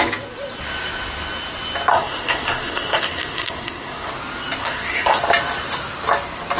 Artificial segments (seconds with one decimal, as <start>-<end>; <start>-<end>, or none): 1.9-4.1; 4.6-5.2